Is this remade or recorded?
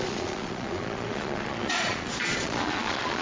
remade